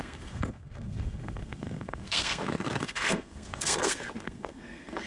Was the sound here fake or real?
fake